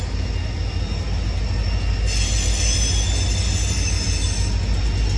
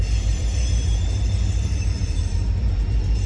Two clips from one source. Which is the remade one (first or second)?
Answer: second